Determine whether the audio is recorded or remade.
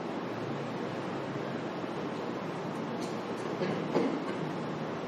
recorded